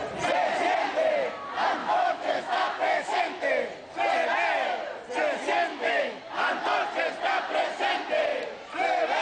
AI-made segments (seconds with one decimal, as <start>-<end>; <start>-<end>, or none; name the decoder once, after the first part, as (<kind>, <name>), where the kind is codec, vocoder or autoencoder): 1.8-3.5 (autoencoder, DAC-VAE); 5.7-6.2